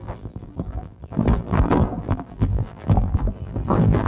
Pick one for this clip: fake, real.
fake